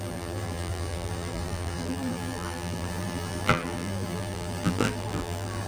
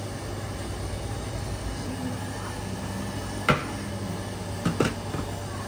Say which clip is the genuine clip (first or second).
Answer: second